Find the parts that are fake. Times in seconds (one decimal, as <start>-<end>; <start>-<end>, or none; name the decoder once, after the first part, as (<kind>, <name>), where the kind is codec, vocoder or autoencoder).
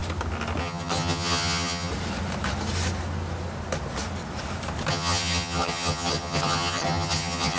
0.6-1.9 (vocoder, HiFi-GAN); 4.9-7.6